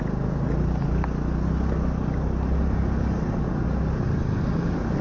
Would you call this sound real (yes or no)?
yes